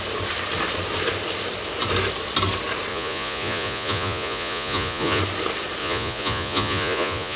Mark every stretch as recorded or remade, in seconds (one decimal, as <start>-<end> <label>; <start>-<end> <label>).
0.0-2.9 recorded; 2.9-5.2 remade; 5.2-5.8 recorded; 5.8-7.4 remade